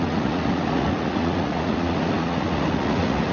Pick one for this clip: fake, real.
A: fake